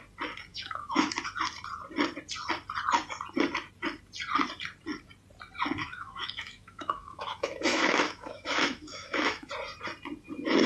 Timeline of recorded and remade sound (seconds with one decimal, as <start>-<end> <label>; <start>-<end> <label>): 0.0-0.5 recorded; 0.5-1.1 remade; 1.1-5.8 recorded; 5.8-9.5 remade; 9.5-10.7 recorded